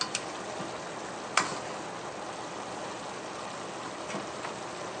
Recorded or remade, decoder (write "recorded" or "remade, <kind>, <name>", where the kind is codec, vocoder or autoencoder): recorded